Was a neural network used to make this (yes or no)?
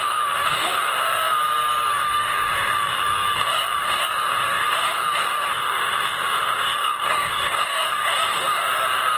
yes